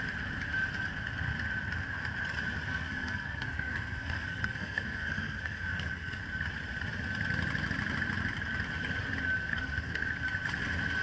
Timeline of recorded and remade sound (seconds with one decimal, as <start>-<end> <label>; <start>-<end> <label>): 0.0-2.7 recorded; 2.7-6.2 remade; 6.2-9.5 recorded; 9.5-10.1 remade; 10.1-11.0 recorded